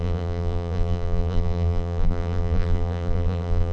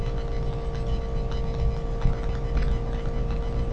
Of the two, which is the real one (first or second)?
second